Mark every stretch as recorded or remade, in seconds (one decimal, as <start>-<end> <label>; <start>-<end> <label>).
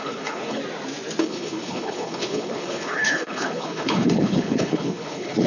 0.0-0.6 remade; 0.6-1.2 recorded; 1.2-5.5 remade